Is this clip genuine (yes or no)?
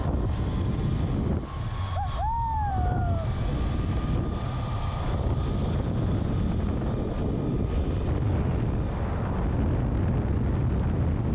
yes